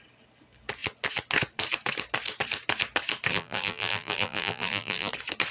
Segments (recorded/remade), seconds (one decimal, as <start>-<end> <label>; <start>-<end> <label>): 0.0-3.3 recorded; 3.3-5.1 remade; 5.1-5.5 recorded